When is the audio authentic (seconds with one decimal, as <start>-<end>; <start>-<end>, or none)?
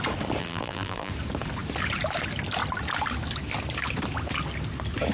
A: 0.0-0.4; 1.1-5.1